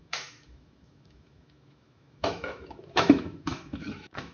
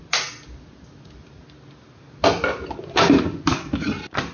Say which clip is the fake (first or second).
first